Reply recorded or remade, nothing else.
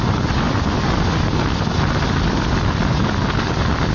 recorded